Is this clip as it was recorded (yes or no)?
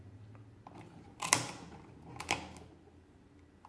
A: yes